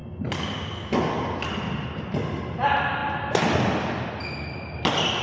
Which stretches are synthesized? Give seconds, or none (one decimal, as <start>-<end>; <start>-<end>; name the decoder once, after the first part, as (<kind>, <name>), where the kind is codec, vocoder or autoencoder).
none